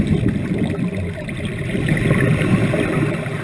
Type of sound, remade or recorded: recorded